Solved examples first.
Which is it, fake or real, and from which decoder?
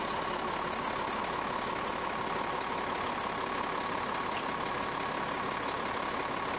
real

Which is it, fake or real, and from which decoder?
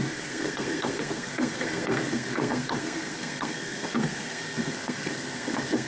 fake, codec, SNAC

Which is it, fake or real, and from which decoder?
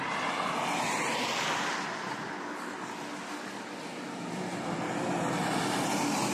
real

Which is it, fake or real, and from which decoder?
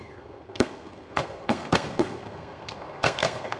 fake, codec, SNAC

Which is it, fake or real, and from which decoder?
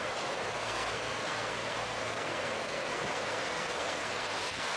fake, codec, SNAC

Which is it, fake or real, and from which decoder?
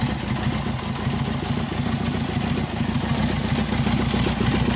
real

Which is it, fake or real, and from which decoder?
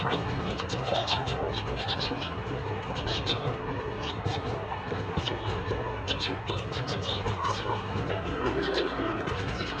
fake, codec, SNAC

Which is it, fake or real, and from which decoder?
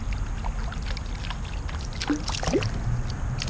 real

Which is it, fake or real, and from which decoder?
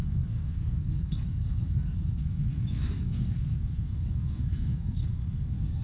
fake, codec, SNAC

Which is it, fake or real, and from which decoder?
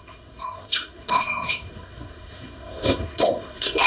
fake, codec, SNAC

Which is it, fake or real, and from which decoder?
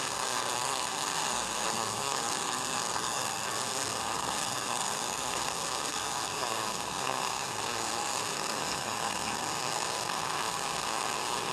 fake, codec, SNAC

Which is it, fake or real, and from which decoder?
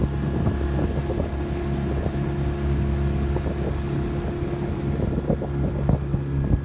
real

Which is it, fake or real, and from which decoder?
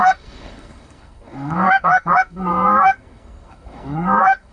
fake, codec, SNAC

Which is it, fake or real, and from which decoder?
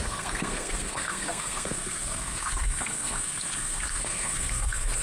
fake, codec, SNAC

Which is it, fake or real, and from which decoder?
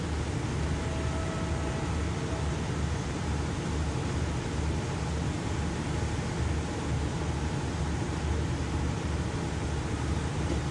real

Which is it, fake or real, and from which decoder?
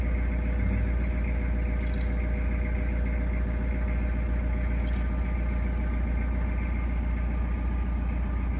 real